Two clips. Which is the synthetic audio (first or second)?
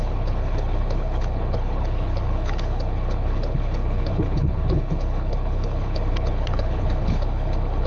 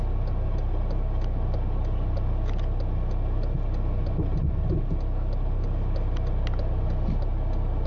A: first